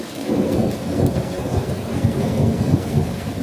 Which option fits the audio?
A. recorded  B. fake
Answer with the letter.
B